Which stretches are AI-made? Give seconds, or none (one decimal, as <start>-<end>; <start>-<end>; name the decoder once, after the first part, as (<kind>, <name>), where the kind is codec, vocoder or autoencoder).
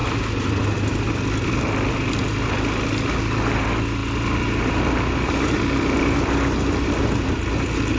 none